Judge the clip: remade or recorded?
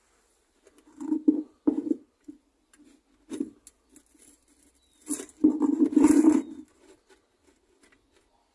recorded